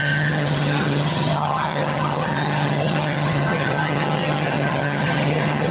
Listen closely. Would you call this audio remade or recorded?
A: remade